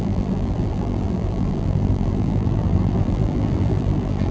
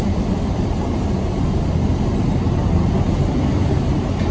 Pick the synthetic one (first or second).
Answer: first